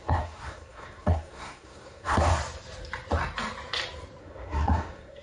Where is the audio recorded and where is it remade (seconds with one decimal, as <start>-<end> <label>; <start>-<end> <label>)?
0.0-2.3 remade; 2.3-4.2 recorded; 4.2-5.2 remade

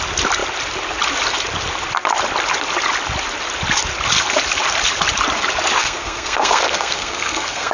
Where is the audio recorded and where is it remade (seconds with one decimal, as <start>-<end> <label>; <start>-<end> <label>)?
0.0-5.8 recorded; 5.8-7.7 remade

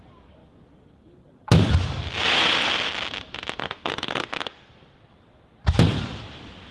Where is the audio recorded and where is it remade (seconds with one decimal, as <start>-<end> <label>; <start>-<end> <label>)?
0.0-3.6 recorded; 3.6-5.1 remade; 5.1-6.7 recorded